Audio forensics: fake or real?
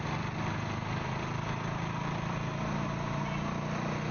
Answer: real